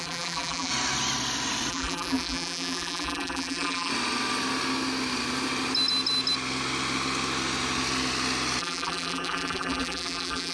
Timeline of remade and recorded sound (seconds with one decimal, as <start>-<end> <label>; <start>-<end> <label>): 0.0-0.7 remade; 0.7-1.7 recorded; 1.7-3.9 remade; 3.9-8.6 recorded; 8.6-10.5 remade

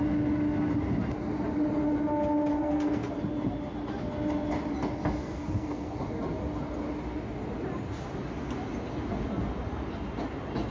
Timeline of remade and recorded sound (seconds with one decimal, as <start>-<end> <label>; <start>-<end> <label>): 0.0-2.5 recorded; 2.5-3.1 remade; 3.1-5.2 recorded; 5.2-6.0 remade; 6.0-10.7 recorded

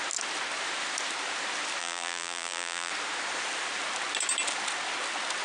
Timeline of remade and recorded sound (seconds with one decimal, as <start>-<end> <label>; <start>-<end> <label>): 0.0-1.8 recorded; 1.8-2.9 remade; 2.9-5.4 recorded